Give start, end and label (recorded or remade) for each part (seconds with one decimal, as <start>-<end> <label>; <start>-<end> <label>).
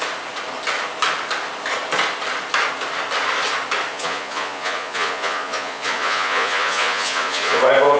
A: 0.0-3.9 recorded; 3.9-7.6 remade; 7.6-8.0 recorded